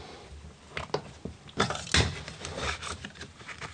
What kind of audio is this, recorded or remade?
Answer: recorded